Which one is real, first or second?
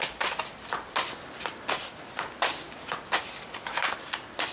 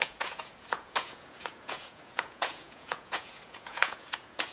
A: first